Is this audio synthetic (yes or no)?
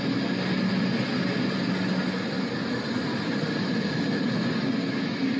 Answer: no